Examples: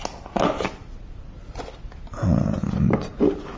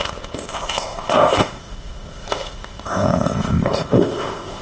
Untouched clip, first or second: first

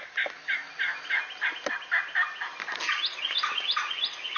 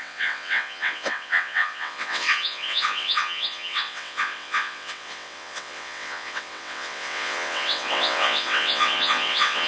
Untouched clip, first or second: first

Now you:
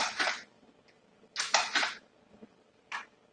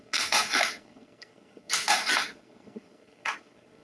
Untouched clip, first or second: first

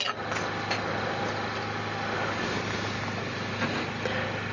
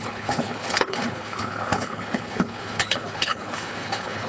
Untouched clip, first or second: first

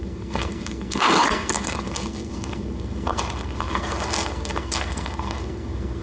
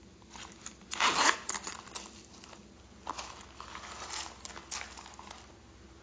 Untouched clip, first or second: second